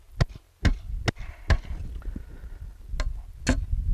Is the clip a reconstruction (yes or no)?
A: no